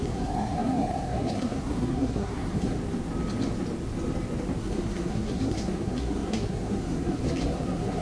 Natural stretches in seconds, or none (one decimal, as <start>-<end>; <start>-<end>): 2.8-4.6